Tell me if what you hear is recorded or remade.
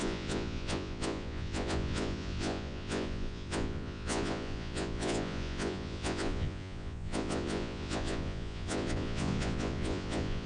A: remade